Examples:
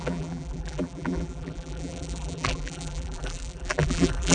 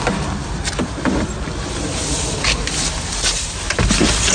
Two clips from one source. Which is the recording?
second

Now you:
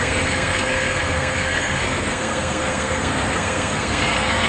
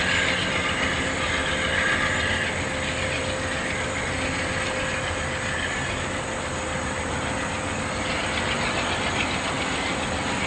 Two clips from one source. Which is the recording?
second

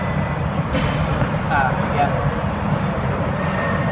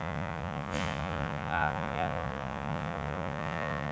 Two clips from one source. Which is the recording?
first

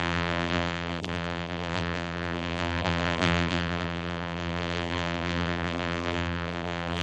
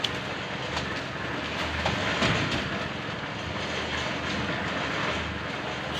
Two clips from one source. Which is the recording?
second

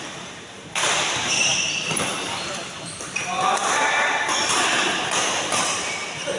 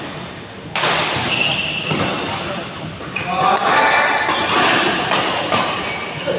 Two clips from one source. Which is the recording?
second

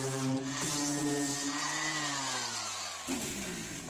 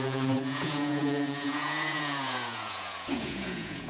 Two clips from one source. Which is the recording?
first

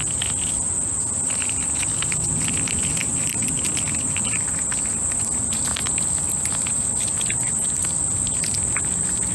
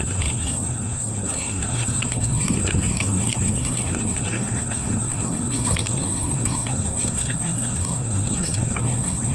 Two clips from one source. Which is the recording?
first